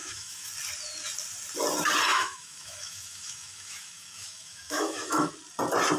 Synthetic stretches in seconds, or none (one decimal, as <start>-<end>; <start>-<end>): 0.0-0.5; 2.1-5.3